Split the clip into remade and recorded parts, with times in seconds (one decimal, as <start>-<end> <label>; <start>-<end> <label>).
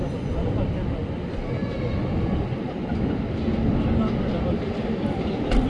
0.0-5.7 recorded